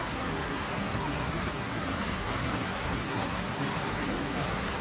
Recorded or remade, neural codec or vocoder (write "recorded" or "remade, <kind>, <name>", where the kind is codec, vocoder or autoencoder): remade, codec, SNAC